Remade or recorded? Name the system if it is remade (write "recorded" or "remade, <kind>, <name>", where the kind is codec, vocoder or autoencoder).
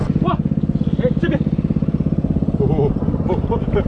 recorded